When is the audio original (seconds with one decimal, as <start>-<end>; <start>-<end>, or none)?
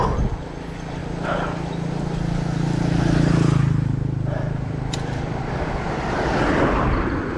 0.0-7.4